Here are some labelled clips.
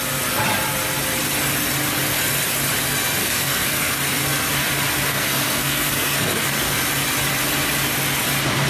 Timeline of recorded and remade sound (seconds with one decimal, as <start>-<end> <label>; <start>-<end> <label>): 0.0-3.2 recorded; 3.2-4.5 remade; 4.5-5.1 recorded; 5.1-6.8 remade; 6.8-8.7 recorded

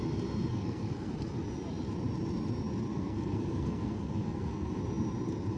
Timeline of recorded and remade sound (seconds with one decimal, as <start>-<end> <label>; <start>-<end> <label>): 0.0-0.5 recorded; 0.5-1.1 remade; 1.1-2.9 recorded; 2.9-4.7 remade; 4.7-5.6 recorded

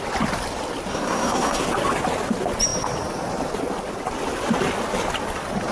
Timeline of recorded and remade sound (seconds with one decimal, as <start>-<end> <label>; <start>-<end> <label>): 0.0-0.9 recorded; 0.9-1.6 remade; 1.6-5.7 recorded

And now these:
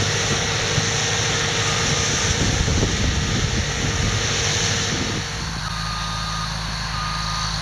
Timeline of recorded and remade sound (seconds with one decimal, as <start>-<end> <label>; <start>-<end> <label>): 0.0-7.6 recorded